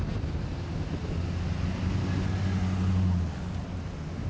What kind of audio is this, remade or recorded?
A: recorded